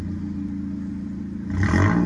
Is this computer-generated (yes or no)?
no